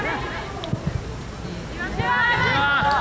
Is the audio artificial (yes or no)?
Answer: no